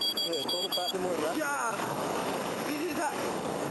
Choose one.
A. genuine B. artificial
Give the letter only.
B